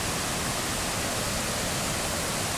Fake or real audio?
real